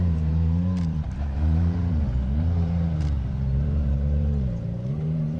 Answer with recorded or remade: remade